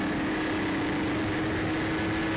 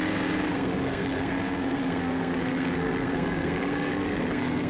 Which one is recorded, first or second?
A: first